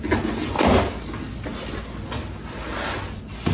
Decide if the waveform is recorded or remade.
recorded